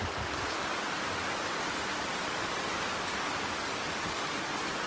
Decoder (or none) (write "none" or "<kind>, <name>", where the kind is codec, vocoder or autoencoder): none